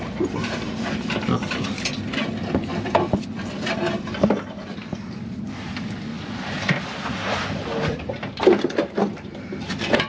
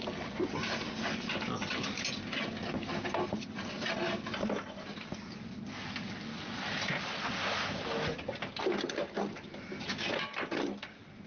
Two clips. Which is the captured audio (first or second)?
second